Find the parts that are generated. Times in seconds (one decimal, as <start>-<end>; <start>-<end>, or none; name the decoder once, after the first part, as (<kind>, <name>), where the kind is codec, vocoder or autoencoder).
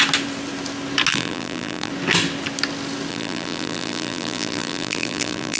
1.1-1.9 (vocoder, BigVGAN v2); 3.1-5.6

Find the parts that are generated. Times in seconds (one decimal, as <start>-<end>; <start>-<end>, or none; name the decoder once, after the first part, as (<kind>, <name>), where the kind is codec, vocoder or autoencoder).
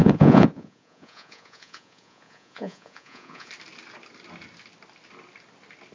0.0-3.5 (vocoder, Vocos)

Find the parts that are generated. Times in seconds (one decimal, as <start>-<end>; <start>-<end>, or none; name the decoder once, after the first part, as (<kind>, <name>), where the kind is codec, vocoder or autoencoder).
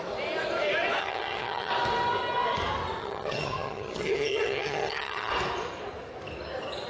1.0-1.7 (vocoder, HiFi-GAN); 3.0-5.3